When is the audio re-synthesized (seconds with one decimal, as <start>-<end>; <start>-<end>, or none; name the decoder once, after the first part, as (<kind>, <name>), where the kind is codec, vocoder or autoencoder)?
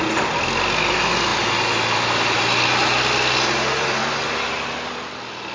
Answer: 1.3-4.1 (vocoder, BigVGAN v2)